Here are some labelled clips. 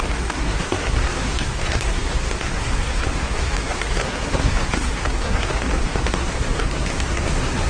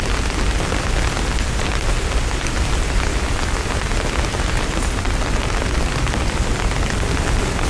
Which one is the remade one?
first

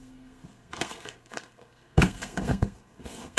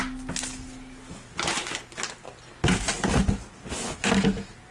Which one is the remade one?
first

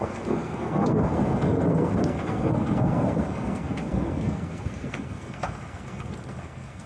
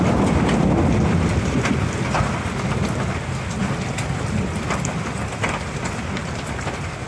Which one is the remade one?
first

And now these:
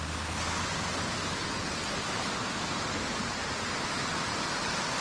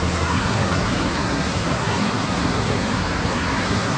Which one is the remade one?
second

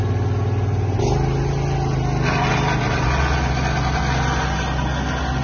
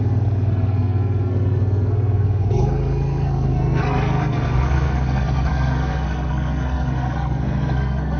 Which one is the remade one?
second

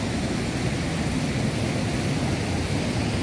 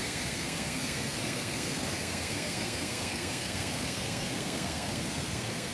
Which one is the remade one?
second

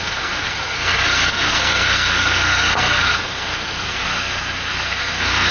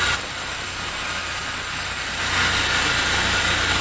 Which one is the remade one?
first